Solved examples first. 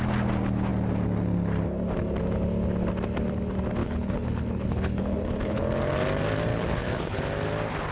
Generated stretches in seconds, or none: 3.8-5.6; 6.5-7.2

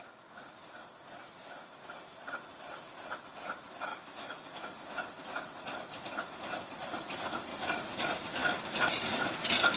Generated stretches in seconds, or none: 3.9-4.6

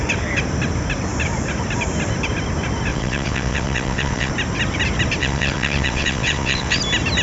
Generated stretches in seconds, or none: 2.9-4.3; 5.2-6.8

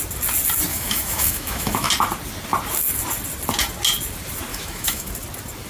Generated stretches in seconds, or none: 0.7-1.9; 4.5-5.1

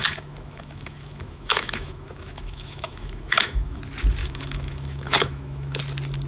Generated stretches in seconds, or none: 0.0-3.8; 4.2-5.8

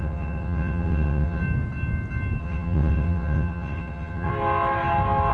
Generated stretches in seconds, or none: 0.0-1.4; 2.4-4.3

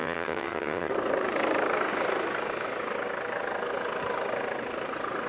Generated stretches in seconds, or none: 0.0-0.9

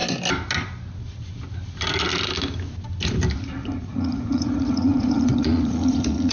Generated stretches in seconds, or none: 3.8-6.3